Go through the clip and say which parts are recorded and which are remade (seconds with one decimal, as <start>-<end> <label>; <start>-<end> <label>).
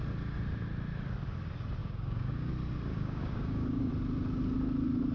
0.0-1.8 recorded; 1.8-2.5 remade; 2.5-2.9 recorded; 2.9-3.9 remade; 3.9-5.1 recorded